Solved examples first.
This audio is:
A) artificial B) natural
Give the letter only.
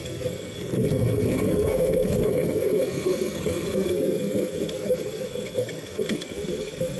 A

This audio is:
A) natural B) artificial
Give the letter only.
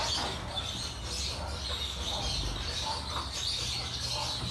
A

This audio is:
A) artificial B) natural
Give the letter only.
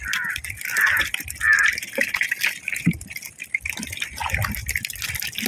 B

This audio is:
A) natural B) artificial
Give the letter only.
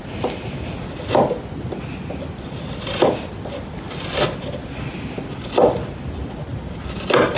A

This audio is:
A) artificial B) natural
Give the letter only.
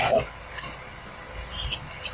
B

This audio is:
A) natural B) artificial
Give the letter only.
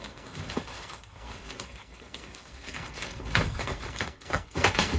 B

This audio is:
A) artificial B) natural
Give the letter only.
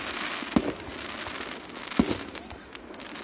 B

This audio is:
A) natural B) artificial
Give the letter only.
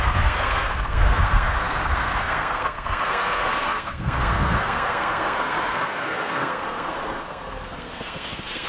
B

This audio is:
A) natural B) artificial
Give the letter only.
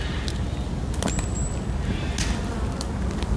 A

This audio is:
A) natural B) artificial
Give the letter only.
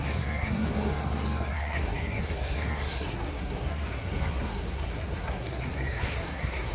B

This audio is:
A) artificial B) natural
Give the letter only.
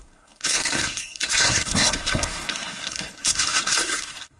A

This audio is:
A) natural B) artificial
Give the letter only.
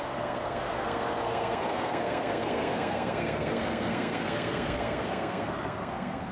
B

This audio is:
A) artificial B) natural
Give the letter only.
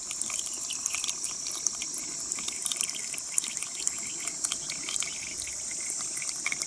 B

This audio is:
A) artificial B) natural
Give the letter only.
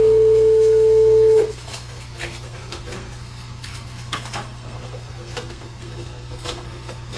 A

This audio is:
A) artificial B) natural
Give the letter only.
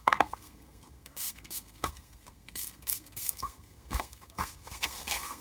A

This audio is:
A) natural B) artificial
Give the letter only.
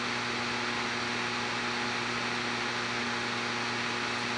A